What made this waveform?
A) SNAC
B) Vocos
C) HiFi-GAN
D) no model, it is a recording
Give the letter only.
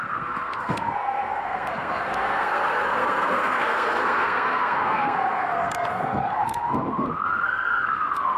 A